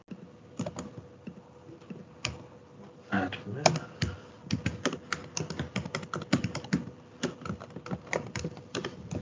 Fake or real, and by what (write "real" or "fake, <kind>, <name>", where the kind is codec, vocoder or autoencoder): real